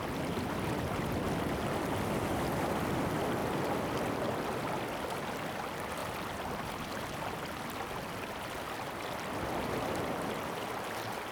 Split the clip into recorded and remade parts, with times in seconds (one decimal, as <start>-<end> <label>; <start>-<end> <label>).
0.0-3.4 recorded; 3.4-4.0 remade; 4.0-11.3 recorded